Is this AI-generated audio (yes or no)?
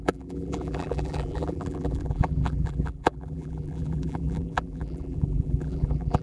yes